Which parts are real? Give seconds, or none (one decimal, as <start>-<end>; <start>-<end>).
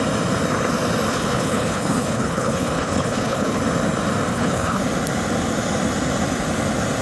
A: 0.0-1.1; 3.6-4.3; 4.8-7.0